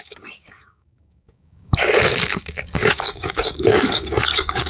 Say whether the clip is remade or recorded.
remade